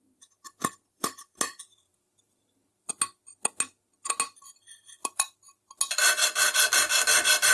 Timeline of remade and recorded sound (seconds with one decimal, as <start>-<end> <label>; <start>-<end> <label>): 0.0-0.6 recorded; 0.6-2.9 remade; 2.9-5.0 recorded; 5.0-5.5 remade; 5.5-7.5 recorded